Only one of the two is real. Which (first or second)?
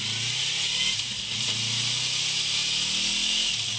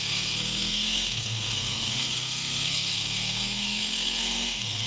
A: first